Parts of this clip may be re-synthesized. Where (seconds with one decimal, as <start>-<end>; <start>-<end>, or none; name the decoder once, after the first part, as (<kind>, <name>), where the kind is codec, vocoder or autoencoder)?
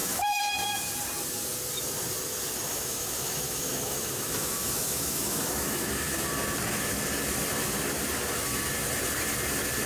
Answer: 0.0-0.9 (autoencoder, DAC-VAE); 2.7-5.9